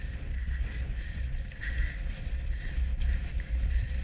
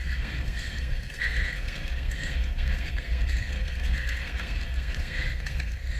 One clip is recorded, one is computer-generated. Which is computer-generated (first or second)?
second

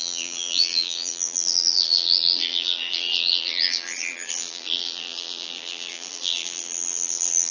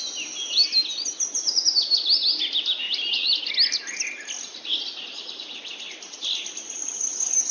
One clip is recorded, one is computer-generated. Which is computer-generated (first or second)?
first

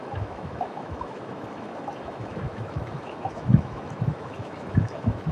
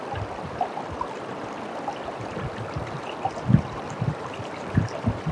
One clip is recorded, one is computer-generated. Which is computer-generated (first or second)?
first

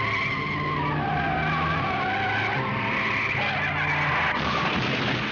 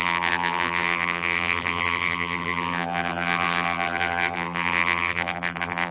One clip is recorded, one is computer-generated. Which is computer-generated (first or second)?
second